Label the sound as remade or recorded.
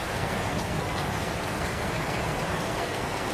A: remade